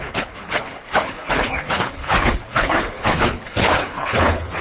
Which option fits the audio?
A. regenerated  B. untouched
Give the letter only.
A